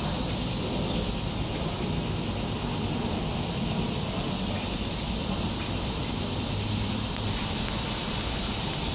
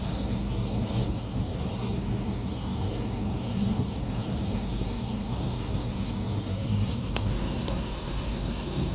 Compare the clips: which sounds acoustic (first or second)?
first